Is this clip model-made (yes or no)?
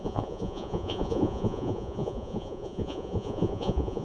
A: yes